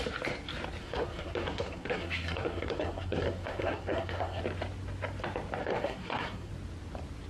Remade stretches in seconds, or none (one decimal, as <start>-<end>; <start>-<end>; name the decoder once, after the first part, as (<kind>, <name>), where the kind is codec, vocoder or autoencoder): 0.8-4.4 (codec, SNAC); 5.6-6.5